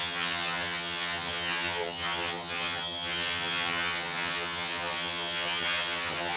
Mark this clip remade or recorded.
remade